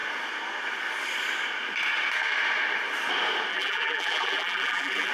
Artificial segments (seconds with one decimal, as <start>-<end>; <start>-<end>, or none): 3.5-5.1